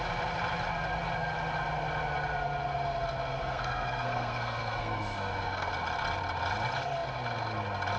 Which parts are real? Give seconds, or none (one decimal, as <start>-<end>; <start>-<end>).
0.0-3.4; 5.7-8.0